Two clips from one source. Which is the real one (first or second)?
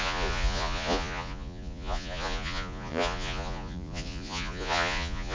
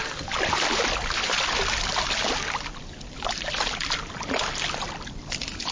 second